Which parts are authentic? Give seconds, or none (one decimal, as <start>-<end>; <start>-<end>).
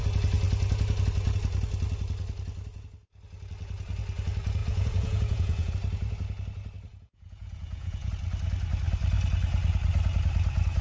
0.0-4.6; 5.7-6.9; 8.1-10.8